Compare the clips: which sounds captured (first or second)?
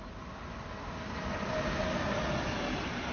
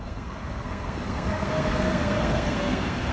first